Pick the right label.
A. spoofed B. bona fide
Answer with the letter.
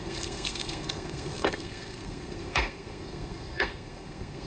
A